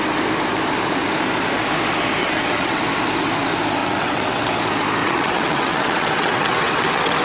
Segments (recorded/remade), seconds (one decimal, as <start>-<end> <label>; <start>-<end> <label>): 0.0-2.2 recorded; 2.2-2.8 remade; 2.8-3.8 recorded; 3.8-4.5 remade; 4.5-5.0 recorded; 5.0-7.2 remade